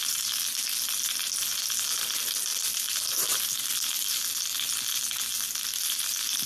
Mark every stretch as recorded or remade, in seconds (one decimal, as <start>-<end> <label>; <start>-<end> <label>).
0.0-6.5 recorded